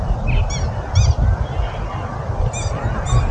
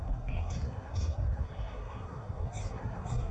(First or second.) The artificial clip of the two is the second